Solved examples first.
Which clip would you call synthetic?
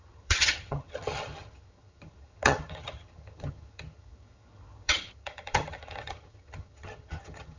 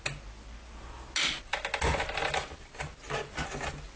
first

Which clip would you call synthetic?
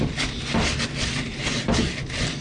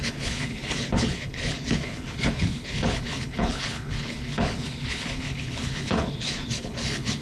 second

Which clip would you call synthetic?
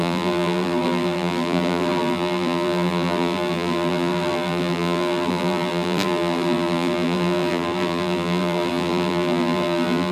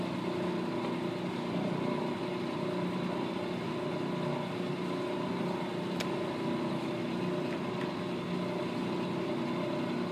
first